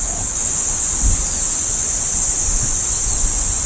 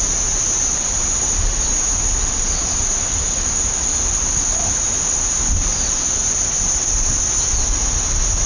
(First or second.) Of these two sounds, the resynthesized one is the first